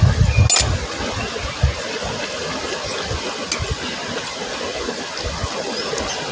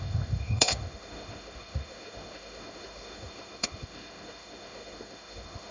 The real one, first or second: first